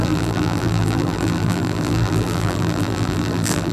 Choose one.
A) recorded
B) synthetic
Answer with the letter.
B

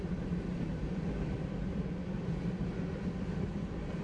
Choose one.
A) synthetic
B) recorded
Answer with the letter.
A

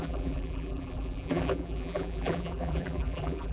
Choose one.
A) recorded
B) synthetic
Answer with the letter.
B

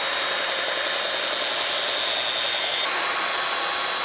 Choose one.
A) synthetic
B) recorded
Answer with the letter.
B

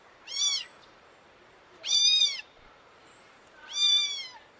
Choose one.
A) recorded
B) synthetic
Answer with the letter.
B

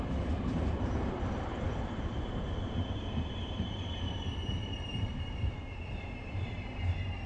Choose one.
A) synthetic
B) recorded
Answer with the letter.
A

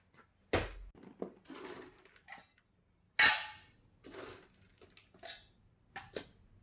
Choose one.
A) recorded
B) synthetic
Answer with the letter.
A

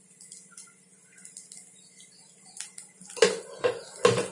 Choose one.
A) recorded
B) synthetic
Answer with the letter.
A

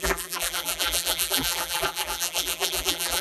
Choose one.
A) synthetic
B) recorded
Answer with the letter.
A